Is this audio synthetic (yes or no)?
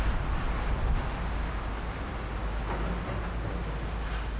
no